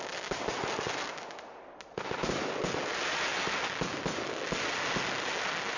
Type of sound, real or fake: real